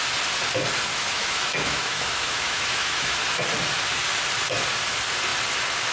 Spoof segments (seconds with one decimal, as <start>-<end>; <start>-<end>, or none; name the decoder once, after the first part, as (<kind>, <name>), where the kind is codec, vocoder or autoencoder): 0.9-3.2 (autoencoder, DAC-VAE)